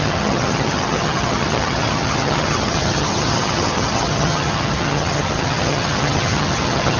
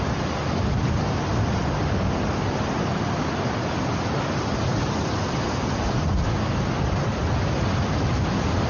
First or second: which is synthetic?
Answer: first